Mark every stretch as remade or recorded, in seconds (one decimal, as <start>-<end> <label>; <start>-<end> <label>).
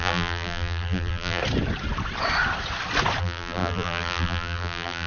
0.0-1.4 remade; 1.4-3.2 recorded; 3.2-5.1 remade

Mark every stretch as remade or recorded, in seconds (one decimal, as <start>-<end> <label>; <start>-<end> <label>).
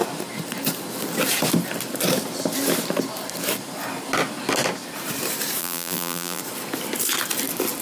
0.0-5.6 recorded; 5.6-6.4 remade; 6.4-7.8 recorded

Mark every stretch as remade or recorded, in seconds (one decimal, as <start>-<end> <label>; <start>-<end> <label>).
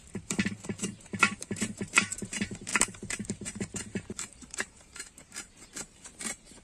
0.0-6.6 remade